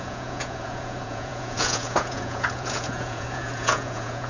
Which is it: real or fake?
fake